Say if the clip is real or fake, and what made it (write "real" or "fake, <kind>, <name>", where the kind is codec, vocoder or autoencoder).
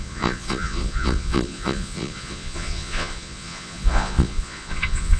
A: fake, vocoder, Vocos